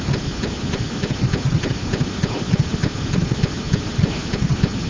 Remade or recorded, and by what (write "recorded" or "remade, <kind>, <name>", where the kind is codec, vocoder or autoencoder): recorded